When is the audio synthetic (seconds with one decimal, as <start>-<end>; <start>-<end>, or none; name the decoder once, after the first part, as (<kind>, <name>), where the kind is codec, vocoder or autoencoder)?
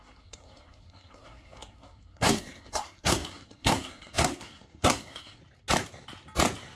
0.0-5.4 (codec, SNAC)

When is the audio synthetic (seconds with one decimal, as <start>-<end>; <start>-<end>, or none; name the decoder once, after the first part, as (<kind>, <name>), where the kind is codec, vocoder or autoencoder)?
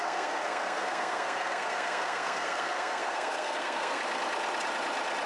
0.0-4.0 (codec, SNAC)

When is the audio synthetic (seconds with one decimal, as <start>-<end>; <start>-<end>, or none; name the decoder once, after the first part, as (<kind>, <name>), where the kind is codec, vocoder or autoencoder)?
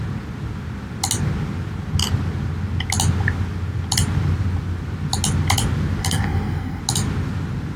6.0-6.8 (codec, SNAC)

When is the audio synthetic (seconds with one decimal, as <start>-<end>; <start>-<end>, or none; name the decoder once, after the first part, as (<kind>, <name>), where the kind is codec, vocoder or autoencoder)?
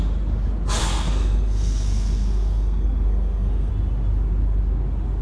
0.8-3.7 (codec, SNAC)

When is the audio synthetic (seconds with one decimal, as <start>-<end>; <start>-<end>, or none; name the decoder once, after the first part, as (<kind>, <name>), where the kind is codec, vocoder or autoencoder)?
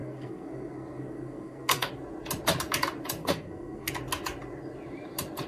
0.0-1.9 (codec, SNAC); 3.2-3.9